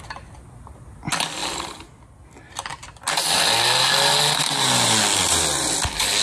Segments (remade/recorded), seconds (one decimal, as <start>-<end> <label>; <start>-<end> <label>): 0.0-6.2 recorded